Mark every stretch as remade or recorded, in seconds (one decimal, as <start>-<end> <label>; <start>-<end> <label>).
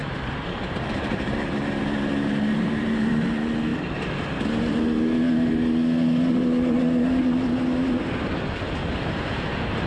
0.0-3.1 remade; 3.1-8.8 recorded; 8.8-9.9 remade